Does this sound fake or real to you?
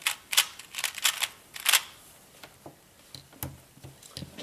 real